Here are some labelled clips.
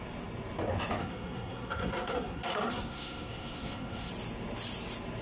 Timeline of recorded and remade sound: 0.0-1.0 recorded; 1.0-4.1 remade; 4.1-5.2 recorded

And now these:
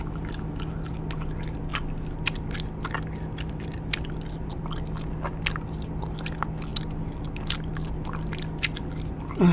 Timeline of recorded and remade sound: 0.0-9.5 recorded

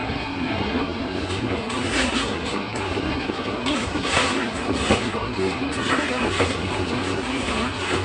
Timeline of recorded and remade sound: 0.0-8.0 remade

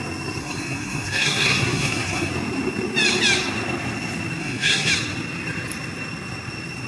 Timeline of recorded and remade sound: 0.0-0.4 recorded; 0.4-2.3 remade; 2.3-4.4 recorded; 4.4-4.9 remade; 4.9-6.9 recorded

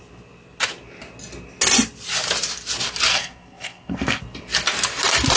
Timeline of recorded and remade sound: 0.0-3.1 recorded; 3.1-4.2 remade; 4.2-5.4 recorded

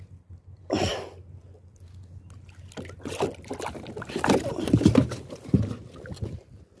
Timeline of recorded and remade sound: 0.0-6.8 recorded

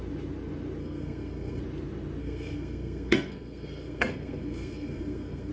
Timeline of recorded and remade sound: 0.0-0.8 recorded; 0.8-1.6 remade; 1.6-2.2 recorded; 2.2-5.5 remade

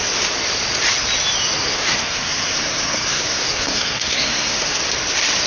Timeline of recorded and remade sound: 0.0-1.7 recorded; 1.7-4.8 remade; 4.8-5.5 recorded